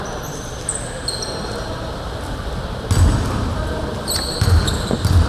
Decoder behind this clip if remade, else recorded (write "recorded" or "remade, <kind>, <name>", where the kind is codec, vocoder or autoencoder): recorded